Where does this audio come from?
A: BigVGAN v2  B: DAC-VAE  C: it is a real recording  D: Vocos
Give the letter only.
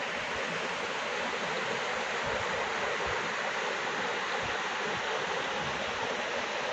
C